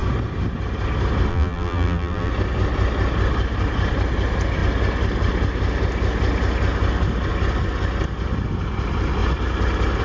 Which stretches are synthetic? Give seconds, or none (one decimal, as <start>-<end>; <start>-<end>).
1.3-2.3